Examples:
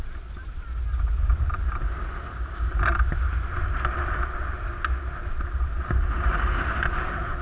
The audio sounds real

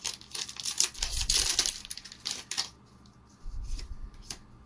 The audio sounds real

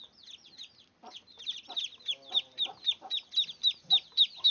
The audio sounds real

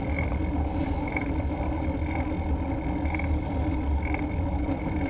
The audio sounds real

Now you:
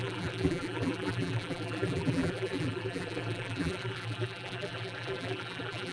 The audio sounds fake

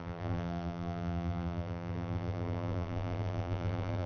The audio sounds fake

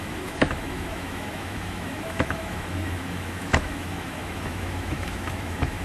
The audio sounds fake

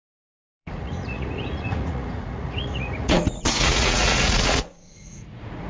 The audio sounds fake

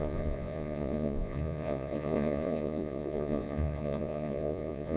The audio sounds fake